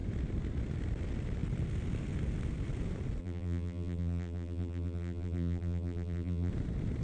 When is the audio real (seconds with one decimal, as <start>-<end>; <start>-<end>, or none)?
0.0-3.2; 6.5-7.0